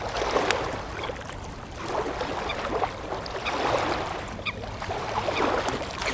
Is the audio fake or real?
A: real